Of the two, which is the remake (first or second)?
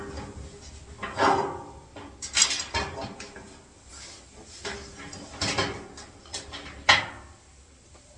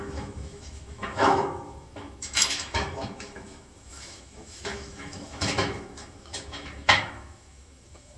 second